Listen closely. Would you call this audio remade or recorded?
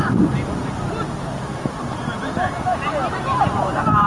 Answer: recorded